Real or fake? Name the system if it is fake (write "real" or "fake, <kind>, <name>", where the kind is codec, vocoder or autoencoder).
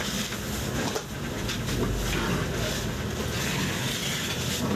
real